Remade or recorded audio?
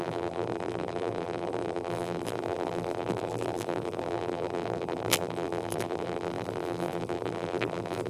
remade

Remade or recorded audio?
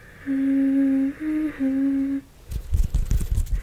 recorded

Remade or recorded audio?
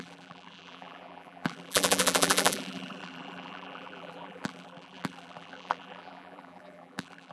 remade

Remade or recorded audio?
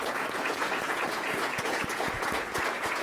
remade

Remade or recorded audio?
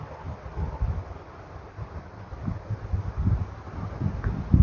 recorded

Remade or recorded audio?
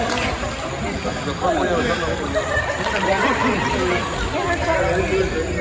recorded